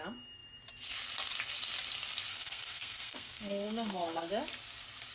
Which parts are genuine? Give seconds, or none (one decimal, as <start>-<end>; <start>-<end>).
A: 0.0-2.3; 4.3-5.1